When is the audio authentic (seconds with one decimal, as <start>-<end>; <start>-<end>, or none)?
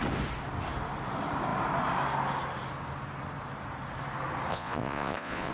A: 0.0-4.5